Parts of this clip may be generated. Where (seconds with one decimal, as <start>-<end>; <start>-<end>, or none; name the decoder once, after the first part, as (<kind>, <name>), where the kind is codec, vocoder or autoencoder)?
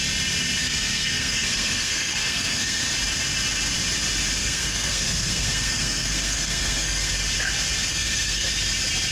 0.6-2.8 (codec, SNAC); 4.4-7.1; 7.9-8.5